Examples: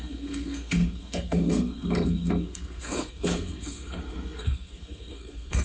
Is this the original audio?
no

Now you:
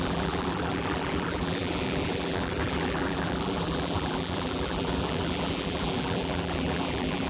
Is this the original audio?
no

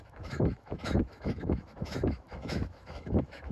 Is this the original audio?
no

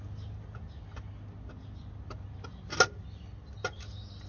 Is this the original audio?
yes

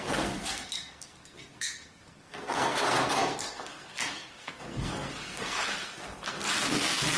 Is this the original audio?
no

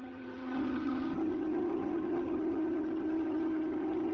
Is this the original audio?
no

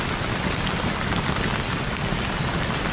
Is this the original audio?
yes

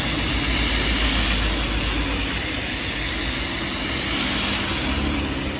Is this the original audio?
yes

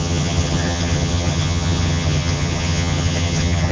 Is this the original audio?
no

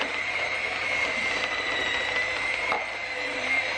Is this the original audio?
no